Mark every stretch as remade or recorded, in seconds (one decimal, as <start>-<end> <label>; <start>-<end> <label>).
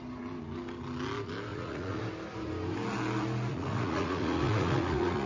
0.0-1.5 recorded; 1.5-2.0 remade; 2.0-3.5 recorded; 3.5-5.3 remade